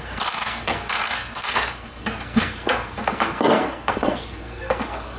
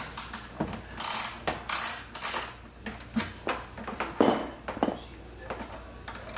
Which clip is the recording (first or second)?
second